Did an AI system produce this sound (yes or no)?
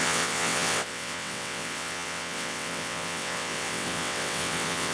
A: yes